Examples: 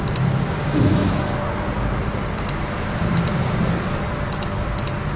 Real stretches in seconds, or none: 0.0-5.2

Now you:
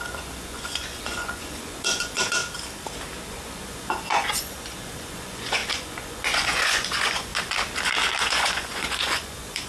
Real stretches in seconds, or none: 2.4-3.3; 7.3-8.2

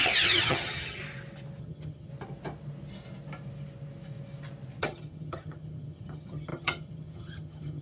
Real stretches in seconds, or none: 1.0-1.6; 2.1-4.8

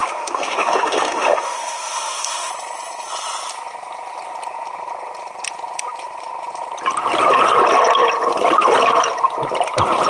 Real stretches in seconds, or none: 2.5-10.1

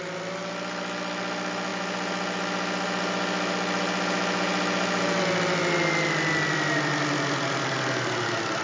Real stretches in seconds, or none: 0.0-8.6

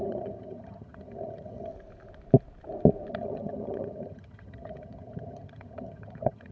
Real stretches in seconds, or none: 1.7-3.1

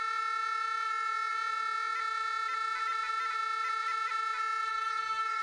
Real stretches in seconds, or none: 0.0-4.7